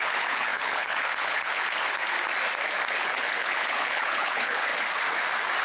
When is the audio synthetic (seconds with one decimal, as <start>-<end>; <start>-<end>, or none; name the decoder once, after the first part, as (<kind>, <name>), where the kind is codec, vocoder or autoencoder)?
0.0-2.0 (codec, HILCodec); 2.9-4.7

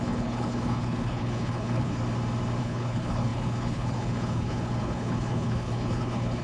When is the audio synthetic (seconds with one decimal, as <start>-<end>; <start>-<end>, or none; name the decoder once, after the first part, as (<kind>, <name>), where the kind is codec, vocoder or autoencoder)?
0.0-2.0 (codec, HILCodec); 2.6-6.4

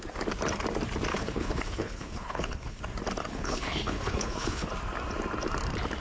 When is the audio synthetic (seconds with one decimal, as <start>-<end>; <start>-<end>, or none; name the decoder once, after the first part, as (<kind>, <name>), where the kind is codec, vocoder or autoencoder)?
1.1-2.8 (codec, HILCodec); 3.2-4.7

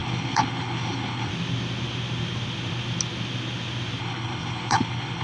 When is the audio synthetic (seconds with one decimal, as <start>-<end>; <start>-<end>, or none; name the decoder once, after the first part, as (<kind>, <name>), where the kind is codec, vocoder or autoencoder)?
0.0-1.3 (codec, HILCodec); 4.0-5.2

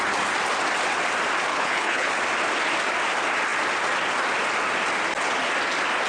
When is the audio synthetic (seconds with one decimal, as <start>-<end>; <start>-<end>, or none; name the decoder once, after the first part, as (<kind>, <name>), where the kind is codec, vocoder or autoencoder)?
1.5-2.1 (codec, HILCodec)

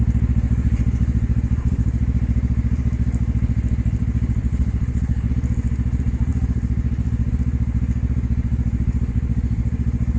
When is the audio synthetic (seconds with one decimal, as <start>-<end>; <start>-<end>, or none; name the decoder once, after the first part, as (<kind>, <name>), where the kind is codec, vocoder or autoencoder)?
4.5-5.3 (codec, HILCodec)